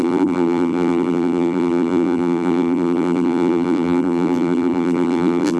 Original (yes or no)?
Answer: no